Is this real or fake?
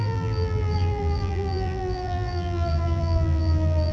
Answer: fake